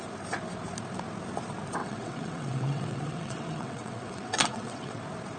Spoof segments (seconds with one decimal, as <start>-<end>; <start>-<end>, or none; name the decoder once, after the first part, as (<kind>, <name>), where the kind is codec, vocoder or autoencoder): 1.8-5.0 (vocoder, WaveNeXt)

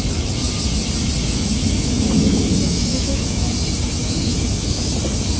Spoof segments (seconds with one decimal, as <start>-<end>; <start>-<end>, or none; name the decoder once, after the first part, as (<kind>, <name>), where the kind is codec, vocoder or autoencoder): 1.2-3.5 (autoencoder, DAC-VAE); 4.0-4.9

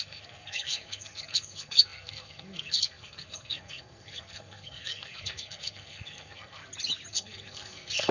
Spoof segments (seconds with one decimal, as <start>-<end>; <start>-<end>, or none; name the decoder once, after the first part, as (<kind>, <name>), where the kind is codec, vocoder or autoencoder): 0.0-6.6 (codec, SNAC); 7.1-8.1

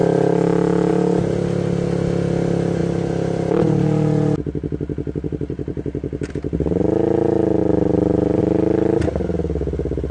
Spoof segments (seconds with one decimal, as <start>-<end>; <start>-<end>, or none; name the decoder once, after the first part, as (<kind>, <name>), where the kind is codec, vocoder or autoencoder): 7.6-8.4 (vocoder, BigVGAN v2)

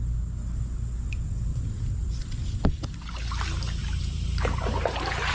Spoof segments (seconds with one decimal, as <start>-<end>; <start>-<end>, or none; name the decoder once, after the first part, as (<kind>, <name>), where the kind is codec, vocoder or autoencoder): 1.5-2.2 (vocoder, BigVGAN v2); 3.8-5.3

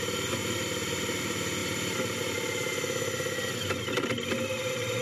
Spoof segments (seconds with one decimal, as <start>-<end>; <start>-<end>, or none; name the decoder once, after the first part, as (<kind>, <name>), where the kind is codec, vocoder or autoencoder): none

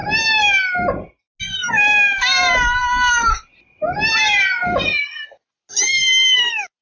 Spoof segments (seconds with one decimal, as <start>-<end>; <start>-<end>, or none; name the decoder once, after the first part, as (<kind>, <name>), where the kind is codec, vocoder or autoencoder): 4.1-4.6 (vocoder, BigVGAN v2)